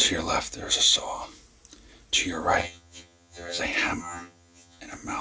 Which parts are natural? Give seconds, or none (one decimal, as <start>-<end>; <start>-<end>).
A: 0.0-2.6; 3.6-4.0; 4.8-5.2